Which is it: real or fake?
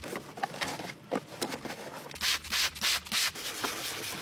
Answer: real